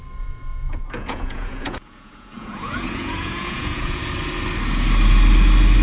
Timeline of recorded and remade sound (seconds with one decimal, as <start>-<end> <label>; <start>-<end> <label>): 0.0-0.5 recorded; 0.5-4.0 remade; 4.0-5.8 recorded